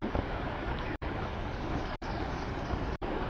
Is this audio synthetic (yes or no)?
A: yes